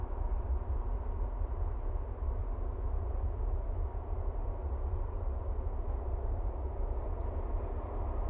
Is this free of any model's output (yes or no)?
yes